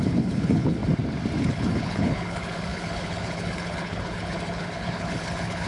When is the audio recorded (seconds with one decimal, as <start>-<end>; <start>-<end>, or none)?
0.8-1.4